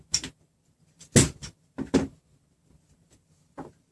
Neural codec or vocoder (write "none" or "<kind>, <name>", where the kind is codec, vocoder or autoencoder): none